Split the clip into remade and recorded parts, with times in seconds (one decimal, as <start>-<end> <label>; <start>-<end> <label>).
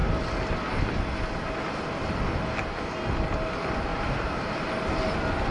0.0-3.9 recorded; 3.9-4.7 remade; 4.7-5.5 recorded